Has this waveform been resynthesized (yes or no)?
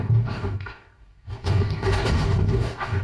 yes